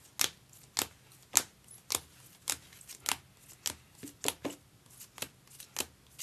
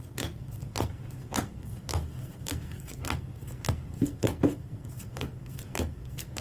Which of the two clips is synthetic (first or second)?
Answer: second